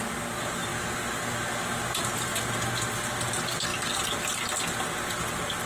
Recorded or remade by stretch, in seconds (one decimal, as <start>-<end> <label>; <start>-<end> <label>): 0.0-5.7 recorded